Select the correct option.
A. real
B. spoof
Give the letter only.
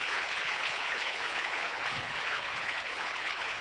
B